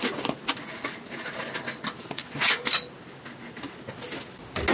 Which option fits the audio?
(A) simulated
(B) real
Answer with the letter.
B